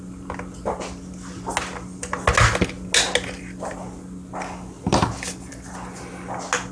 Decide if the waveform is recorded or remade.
recorded